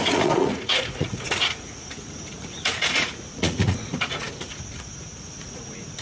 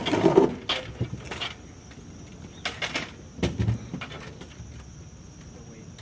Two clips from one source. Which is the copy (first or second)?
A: first